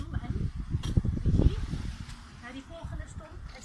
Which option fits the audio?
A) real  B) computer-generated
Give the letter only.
A